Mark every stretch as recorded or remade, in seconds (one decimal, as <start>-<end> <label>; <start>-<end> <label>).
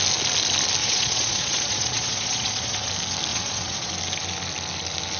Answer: 0.0-0.8 recorded; 0.8-2.9 remade; 2.9-3.3 recorded; 3.3-3.9 remade; 3.9-5.2 recorded